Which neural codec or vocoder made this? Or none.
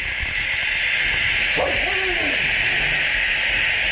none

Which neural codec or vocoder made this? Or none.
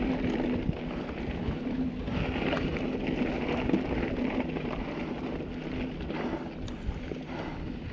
none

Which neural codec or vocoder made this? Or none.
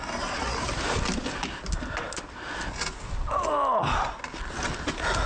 none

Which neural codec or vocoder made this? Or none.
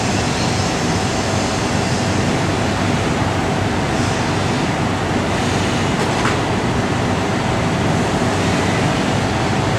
none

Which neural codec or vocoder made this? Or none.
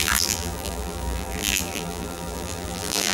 vocoder, BigVGAN v2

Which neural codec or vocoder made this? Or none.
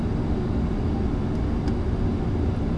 none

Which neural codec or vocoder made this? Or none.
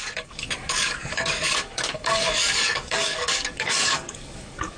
codec, DAC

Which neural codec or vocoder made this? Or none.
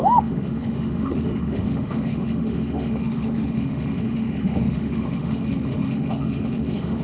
autoencoder, DAC-VAE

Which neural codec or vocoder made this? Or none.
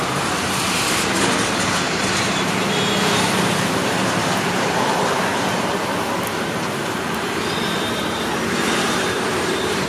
vocoder, BigVGAN v2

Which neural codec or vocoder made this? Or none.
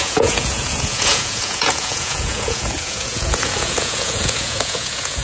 vocoder, Vocos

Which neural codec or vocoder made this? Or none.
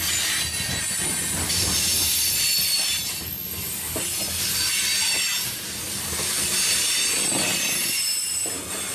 none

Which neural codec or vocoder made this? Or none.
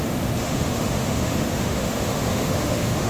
autoencoder, DAC-VAE